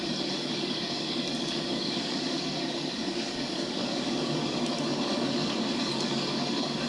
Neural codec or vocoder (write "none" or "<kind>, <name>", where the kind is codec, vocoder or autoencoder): codec, DAC